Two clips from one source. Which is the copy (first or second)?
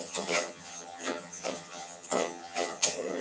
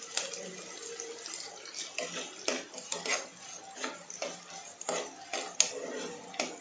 first